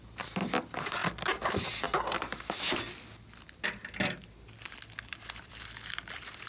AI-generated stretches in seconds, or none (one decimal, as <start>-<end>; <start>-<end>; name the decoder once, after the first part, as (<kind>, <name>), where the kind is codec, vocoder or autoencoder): none